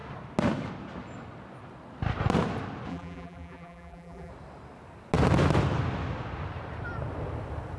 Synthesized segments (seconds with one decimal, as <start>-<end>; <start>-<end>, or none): 2.9-4.3